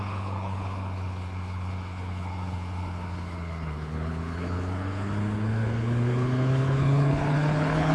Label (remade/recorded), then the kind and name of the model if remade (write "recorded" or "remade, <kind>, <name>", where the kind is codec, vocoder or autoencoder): remade, codec, HILCodec